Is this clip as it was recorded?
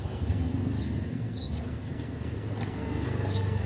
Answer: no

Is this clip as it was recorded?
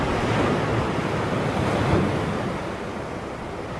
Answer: yes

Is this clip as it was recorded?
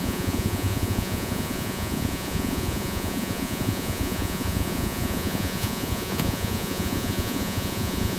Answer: no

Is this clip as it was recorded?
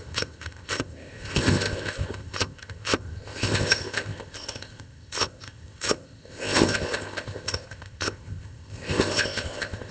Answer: no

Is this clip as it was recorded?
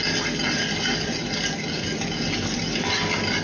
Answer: yes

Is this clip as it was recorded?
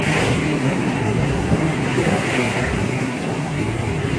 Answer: no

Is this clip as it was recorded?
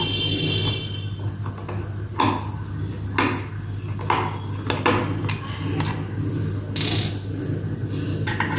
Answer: yes